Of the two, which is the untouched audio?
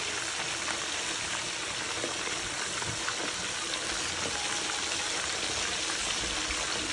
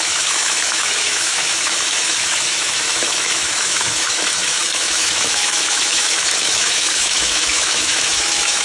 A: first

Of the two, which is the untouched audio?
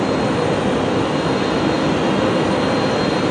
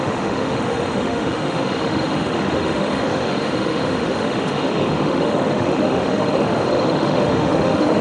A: first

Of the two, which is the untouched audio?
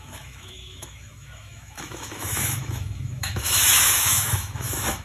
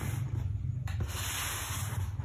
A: second